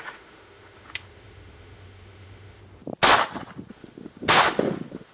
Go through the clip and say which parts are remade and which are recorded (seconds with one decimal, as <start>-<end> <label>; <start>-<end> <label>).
0.0-2.6 remade; 2.6-3.7 recorded; 3.7-5.1 remade